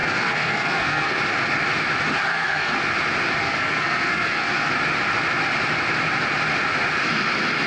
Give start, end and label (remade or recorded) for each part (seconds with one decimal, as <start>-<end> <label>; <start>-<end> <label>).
0.0-1.2 remade; 1.2-2.3 recorded; 2.3-2.8 remade; 2.8-3.4 recorded; 3.4-4.7 remade; 4.7-7.7 recorded